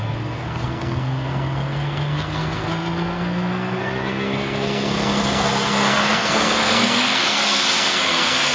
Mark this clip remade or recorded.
remade